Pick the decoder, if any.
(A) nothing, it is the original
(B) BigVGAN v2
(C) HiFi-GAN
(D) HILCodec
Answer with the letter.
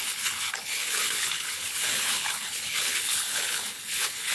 D